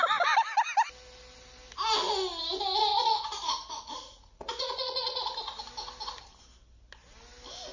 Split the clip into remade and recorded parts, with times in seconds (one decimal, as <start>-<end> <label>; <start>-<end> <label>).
0.0-2.9 recorded; 2.9-5.6 remade; 5.6-7.7 recorded